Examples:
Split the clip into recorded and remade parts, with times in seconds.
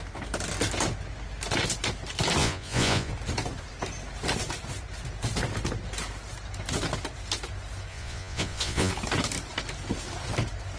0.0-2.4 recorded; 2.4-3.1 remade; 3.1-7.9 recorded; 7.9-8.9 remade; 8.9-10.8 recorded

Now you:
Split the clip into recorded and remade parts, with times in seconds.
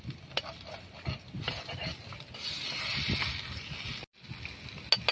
0.0-5.1 recorded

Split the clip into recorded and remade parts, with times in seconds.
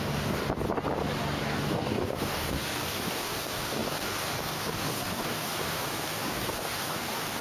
0.0-0.4 remade; 0.4-1.4 recorded; 1.4-7.4 remade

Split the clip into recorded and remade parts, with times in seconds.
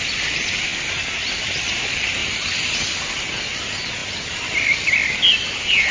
0.0-2.2 recorded; 2.2-2.7 remade; 2.7-5.9 recorded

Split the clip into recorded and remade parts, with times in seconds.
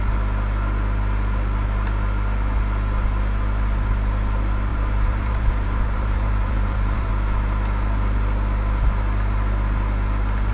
0.0-4.7 recorded; 4.7-7.1 remade; 7.1-10.5 recorded